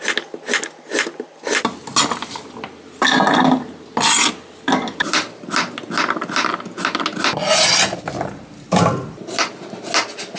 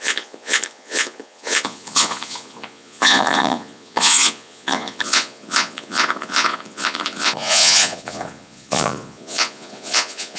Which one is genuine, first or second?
first